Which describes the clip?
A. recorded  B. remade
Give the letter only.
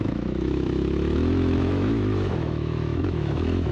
B